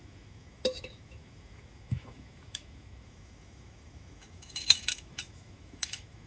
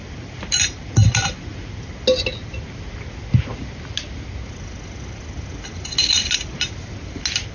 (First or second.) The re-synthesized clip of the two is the first